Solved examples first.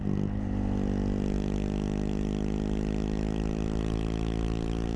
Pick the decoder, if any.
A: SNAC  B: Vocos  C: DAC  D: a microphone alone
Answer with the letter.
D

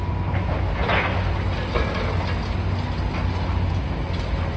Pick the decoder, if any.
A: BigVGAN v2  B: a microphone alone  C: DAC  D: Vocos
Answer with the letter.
B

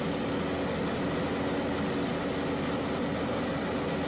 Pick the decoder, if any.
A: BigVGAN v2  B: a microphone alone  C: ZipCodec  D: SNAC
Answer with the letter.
B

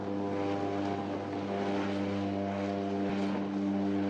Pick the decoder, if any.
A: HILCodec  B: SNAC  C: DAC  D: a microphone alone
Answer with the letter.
D